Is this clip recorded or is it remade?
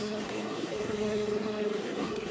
remade